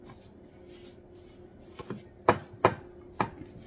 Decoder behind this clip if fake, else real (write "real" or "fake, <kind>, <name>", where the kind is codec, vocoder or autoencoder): real